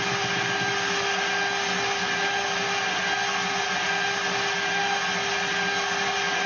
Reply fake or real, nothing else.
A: real